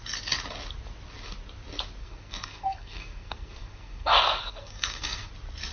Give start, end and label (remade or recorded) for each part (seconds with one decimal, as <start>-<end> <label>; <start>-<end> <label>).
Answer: 0.0-2.0 recorded; 2.0-5.3 remade; 5.3-5.7 recorded